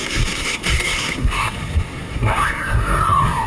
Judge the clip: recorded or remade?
remade